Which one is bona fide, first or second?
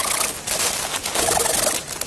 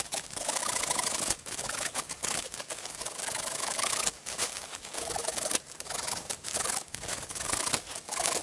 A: first